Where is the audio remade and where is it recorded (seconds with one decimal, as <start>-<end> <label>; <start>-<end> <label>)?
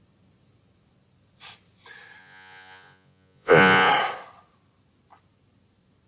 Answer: 0.0-2.2 recorded; 2.2-3.9 remade; 3.9-6.1 recorded